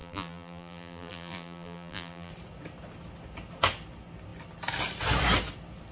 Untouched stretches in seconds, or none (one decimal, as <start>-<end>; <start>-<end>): 2.3-5.9